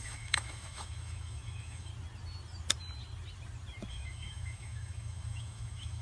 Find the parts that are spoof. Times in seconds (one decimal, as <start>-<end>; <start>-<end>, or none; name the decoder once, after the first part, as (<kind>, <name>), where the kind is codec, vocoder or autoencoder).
0.0-1.9 (autoencoder, DAC-VAE); 3.9-6.0